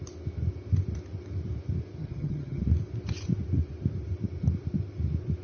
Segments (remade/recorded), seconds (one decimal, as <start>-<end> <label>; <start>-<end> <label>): 0.0-2.0 recorded; 2.0-2.6 remade; 2.6-5.4 recorded